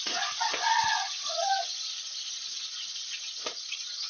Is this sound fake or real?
fake